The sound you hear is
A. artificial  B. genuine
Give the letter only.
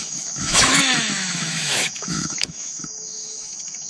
A